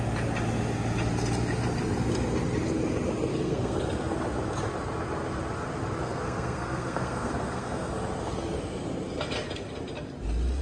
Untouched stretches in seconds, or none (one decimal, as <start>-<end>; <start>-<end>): 0.0-3.3; 3.8-6.0; 7.9-10.6